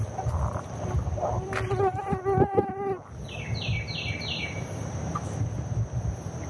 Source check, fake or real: real